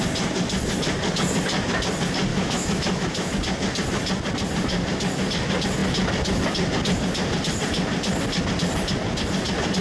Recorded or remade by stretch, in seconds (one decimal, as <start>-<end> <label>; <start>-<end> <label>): 0.0-2.3 recorded; 2.3-3.4 remade; 3.4-9.8 recorded